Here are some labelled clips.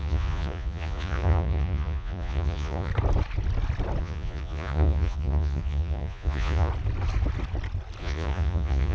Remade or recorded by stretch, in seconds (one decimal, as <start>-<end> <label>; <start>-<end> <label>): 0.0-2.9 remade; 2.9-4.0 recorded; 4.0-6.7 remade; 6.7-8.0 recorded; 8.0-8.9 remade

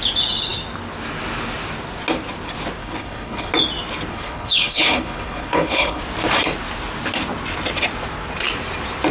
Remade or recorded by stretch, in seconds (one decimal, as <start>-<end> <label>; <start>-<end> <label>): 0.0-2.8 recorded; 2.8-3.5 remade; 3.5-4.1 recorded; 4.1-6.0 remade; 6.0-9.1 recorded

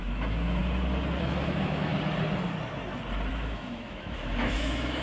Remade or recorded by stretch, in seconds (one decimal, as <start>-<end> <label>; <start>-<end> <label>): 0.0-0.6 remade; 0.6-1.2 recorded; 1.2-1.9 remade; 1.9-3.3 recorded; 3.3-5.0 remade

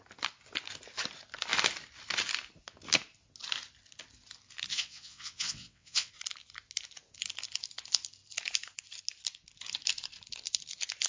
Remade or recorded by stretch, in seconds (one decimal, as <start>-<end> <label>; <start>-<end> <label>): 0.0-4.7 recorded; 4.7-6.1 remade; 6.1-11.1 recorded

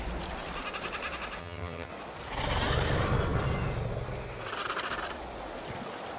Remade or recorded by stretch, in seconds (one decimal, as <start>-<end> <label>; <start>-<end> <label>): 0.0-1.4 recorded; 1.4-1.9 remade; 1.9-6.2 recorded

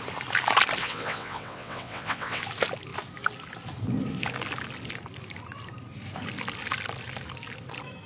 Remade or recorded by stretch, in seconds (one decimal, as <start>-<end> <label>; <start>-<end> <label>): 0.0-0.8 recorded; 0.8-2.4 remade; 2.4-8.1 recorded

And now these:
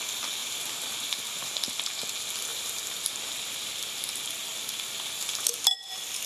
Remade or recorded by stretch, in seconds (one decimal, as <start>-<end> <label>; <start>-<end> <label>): 0.0-0.4 recorded; 0.4-1.5 remade; 1.5-2.5 recorded; 2.5-3.7 remade; 3.7-6.3 recorded

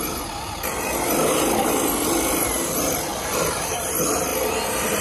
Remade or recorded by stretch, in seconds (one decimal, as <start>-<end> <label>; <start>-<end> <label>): 0.0-5.0 recorded